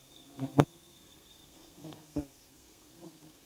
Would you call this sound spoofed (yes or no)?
yes